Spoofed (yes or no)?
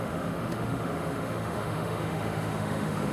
yes